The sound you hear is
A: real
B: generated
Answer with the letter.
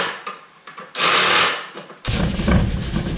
A